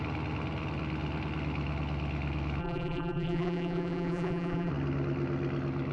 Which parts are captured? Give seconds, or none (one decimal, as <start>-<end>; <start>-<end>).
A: 0.0-2.6; 4.7-5.9